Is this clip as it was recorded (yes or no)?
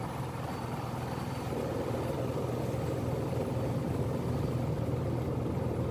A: yes